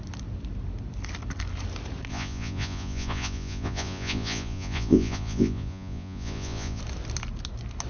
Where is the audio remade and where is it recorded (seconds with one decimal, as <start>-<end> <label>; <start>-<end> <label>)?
0.0-2.1 recorded; 2.1-6.8 remade; 6.8-7.9 recorded